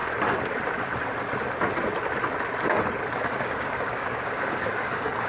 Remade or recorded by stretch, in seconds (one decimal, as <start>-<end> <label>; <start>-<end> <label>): 0.0-3.2 recorded; 3.2-5.3 remade